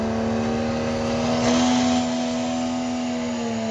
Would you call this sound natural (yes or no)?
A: yes